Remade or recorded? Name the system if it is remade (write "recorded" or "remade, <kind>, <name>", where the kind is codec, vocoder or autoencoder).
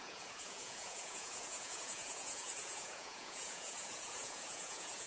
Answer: remade, vocoder, Vocos